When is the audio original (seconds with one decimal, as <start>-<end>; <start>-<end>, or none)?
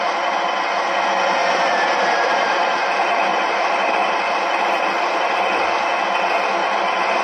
0.0-1.4; 5.5-6.6